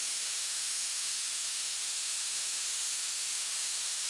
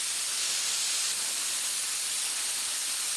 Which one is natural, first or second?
second